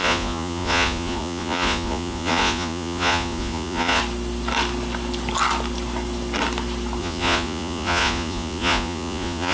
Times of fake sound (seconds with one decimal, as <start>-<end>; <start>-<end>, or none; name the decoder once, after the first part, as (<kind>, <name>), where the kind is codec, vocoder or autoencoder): 0.0-4.0 (vocoder, Vocos); 7.0-9.5